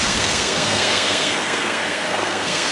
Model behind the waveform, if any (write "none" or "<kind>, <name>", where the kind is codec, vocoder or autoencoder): codec, SNAC